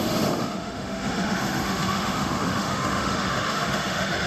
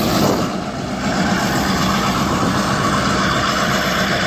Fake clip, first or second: first